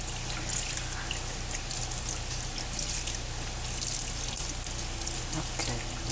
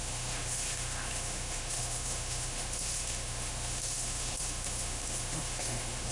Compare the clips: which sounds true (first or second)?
first